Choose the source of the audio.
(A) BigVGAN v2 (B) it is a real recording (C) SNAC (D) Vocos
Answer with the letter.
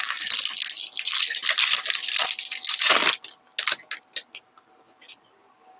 B